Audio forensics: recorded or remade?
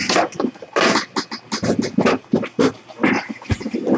recorded